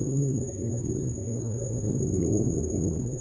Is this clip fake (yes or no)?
yes